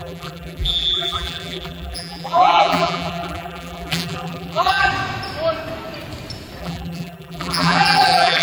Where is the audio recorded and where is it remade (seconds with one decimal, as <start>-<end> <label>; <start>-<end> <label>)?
0.0-4.9 remade; 4.9-6.6 recorded; 6.6-8.4 remade